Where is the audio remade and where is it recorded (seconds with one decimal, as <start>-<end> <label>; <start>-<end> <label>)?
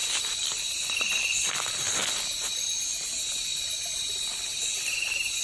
0.0-2.0 remade; 2.0-4.5 recorded; 4.5-5.4 remade